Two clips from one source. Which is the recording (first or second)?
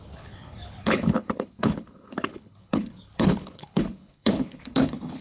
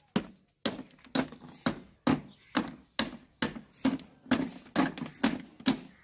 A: second